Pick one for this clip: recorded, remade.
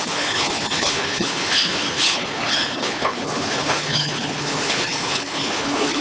remade